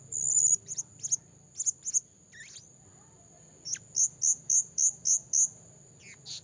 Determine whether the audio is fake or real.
real